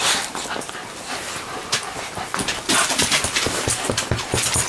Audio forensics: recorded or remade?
remade